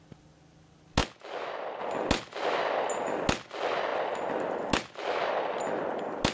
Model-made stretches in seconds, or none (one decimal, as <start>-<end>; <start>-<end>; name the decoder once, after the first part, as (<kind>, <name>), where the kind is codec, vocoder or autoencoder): none